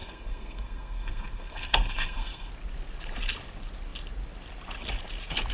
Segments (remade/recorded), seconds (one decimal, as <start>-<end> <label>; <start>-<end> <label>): 0.0-2.5 remade; 2.5-5.5 recorded